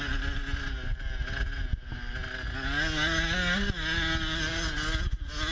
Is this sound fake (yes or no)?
no